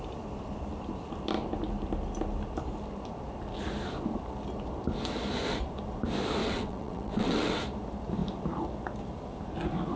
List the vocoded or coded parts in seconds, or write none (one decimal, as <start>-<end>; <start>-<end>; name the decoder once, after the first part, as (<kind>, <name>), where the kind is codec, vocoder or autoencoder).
6.4-7.6 (vocoder, WaveNeXt)